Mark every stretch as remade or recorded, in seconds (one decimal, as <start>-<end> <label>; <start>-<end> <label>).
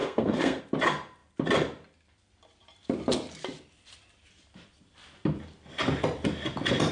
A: 0.0-0.6 remade; 0.6-6.9 recorded